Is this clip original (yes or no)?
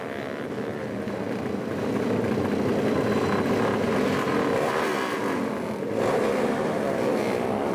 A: yes